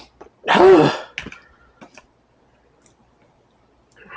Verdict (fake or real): real